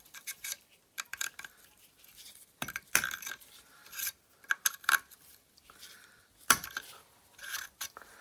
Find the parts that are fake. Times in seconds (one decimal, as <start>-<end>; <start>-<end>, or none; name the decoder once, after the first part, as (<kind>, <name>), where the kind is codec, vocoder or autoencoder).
0.0-8.2 (vocoder, BigVGAN v2)